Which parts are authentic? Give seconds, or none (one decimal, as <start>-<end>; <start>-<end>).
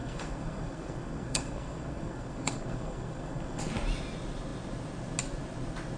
3.6-6.0